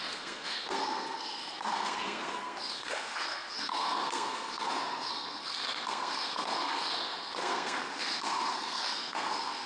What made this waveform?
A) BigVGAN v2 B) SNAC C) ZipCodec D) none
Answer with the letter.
B